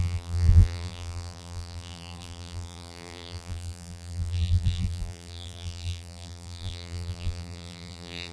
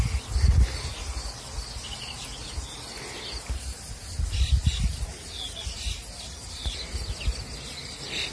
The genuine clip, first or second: second